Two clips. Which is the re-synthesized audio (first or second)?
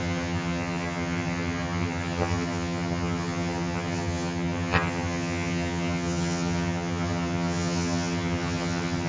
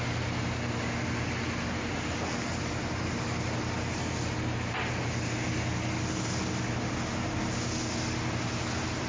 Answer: first